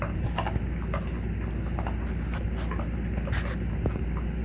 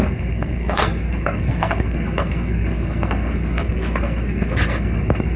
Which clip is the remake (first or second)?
second